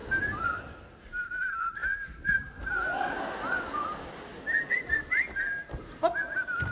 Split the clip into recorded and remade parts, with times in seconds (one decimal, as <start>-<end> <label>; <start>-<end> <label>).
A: 0.0-6.7 recorded